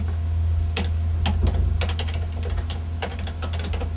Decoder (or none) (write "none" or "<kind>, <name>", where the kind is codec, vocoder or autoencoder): none